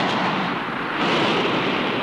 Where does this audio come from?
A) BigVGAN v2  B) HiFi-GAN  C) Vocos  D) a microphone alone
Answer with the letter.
A